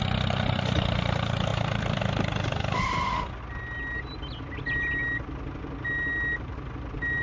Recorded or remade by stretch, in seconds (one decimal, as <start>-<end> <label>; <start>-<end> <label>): 0.0-7.2 recorded